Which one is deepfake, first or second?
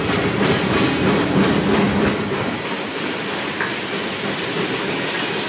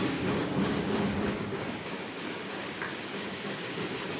second